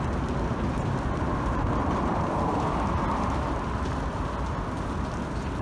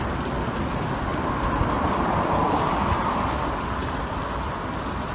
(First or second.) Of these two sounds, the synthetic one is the second